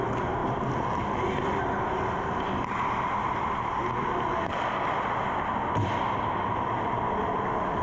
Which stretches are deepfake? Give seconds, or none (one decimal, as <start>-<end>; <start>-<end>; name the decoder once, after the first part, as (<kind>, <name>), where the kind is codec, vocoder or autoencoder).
none

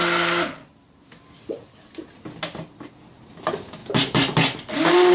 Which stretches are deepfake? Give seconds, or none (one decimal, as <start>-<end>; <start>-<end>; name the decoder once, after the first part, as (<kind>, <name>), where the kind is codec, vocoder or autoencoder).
none